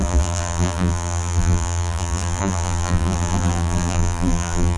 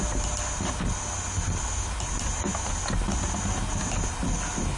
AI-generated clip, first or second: first